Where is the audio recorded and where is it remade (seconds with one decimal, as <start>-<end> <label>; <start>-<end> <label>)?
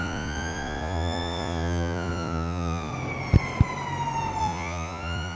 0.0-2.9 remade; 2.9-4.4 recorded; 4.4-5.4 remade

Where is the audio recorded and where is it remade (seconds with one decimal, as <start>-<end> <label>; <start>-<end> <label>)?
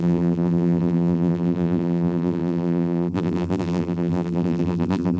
0.0-5.2 remade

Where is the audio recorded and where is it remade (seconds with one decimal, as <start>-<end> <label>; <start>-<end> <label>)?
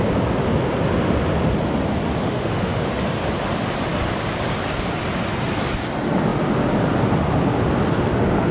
0.0-2.2 recorded; 2.2-2.9 remade; 2.9-8.5 recorded